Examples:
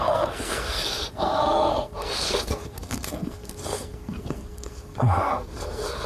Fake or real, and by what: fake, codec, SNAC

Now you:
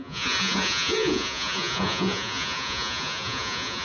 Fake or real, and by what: fake, vocoder, Vocos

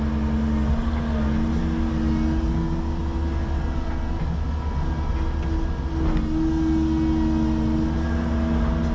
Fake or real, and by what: real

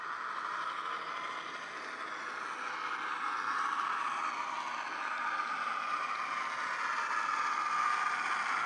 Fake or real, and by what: real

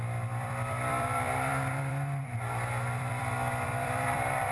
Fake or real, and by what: fake, vocoder, BigVGAN v2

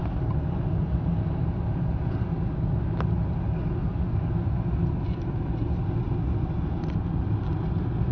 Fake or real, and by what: real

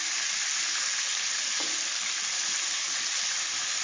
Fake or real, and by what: fake, vocoder, BigVGAN v2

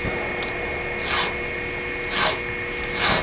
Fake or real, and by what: real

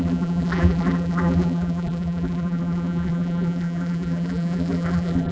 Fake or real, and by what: fake, vocoder, BigVGAN v2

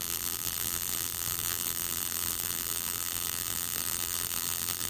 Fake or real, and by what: fake, vocoder, BigVGAN v2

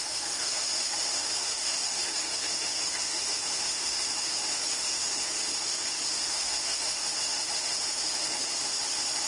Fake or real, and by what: fake, autoencoder, DAC-VAE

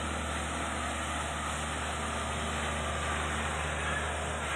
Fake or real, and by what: real